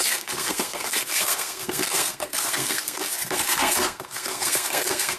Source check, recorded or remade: remade